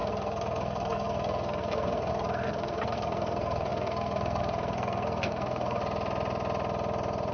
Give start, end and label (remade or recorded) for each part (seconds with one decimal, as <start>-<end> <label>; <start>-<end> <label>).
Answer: 0.0-5.8 remade; 5.8-7.3 recorded